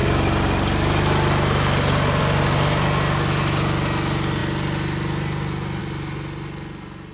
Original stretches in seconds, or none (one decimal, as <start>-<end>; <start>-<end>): 0.0-7.1